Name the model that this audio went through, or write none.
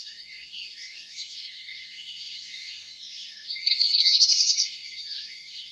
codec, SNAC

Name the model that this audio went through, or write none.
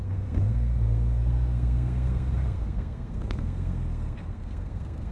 codec, SNAC